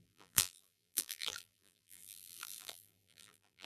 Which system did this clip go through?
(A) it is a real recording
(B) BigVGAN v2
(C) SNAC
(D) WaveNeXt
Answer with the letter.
B